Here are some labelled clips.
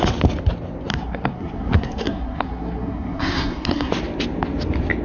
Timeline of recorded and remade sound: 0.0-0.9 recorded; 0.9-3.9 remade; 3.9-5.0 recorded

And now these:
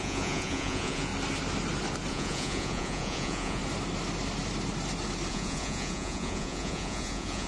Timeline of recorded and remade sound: 0.0-1.1 remade; 1.1-2.1 recorded; 2.1-3.6 remade; 3.6-5.3 recorded; 5.3-7.5 remade